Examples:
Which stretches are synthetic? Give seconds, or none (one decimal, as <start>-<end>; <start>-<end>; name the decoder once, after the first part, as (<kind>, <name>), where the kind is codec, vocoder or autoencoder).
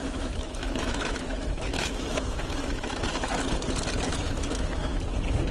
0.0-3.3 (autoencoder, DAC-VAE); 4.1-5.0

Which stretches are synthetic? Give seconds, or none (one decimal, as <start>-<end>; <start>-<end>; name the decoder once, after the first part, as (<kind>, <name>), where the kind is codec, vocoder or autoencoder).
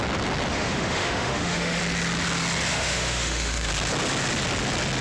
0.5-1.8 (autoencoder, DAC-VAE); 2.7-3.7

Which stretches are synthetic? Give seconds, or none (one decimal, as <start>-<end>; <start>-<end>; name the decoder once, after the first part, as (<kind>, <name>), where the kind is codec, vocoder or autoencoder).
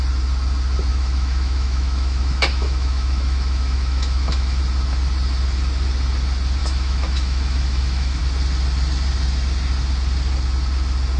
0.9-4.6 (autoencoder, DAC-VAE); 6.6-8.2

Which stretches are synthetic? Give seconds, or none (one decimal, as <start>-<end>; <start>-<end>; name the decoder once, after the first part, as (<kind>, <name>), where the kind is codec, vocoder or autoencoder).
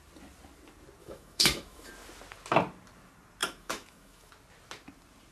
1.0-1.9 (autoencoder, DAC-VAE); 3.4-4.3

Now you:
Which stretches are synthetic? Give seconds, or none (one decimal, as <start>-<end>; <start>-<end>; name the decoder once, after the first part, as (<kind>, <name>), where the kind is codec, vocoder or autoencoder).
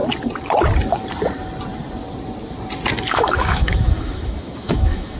3.1-5.2 (autoencoder, DAC-VAE)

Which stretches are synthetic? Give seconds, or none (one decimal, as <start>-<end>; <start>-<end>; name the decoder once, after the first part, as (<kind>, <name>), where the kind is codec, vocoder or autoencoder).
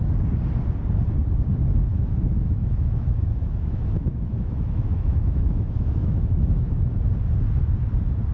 1.9-6.9 (autoencoder, DAC-VAE)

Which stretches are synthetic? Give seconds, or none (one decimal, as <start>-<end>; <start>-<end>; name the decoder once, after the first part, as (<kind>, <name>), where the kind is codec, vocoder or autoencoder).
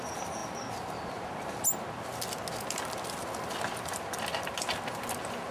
none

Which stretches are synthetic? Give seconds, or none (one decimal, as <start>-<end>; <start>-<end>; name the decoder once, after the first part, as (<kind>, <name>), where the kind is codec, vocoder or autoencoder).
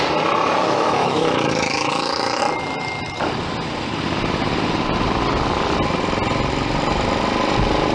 0.6-2.4 (autoencoder, DAC-VAE)